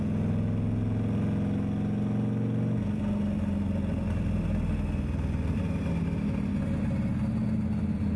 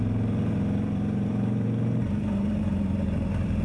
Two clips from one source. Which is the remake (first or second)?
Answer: second